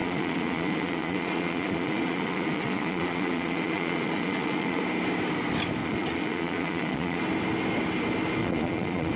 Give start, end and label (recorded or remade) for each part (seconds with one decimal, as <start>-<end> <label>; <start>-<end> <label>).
0.0-4.8 remade; 4.8-5.8 recorded; 5.8-7.2 remade; 7.2-8.4 recorded; 8.4-9.2 remade

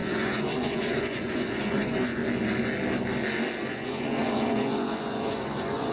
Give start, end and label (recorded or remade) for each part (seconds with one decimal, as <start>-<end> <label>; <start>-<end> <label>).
0.0-2.2 remade; 2.2-3.7 recorded; 3.7-5.9 remade